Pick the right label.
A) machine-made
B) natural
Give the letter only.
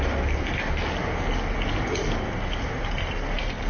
B